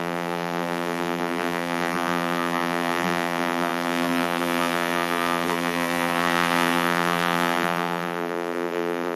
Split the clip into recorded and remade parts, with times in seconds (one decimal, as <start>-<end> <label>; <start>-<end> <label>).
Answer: 0.0-9.2 remade